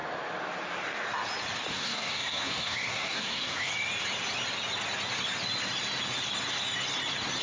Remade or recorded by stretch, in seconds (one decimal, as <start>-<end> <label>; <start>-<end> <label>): 0.0-1.7 recorded; 1.7-3.7 remade; 3.7-7.4 recorded